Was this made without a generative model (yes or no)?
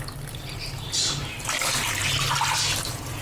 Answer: yes